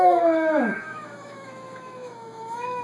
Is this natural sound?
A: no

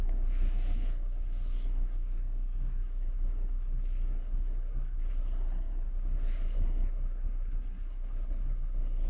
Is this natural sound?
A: no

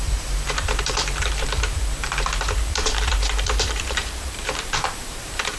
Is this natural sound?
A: no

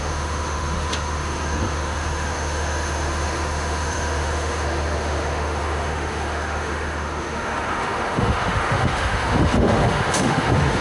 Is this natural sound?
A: no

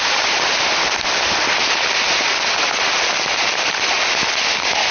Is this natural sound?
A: yes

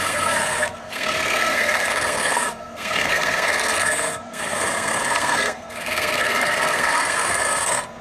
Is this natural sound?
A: no